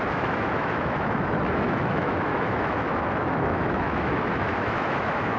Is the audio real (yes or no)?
no